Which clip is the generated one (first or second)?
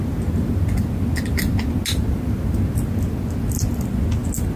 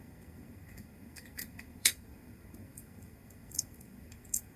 second